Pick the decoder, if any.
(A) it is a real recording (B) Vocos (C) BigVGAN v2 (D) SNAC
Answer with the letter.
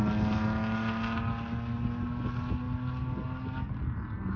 A